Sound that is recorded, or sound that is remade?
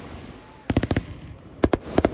remade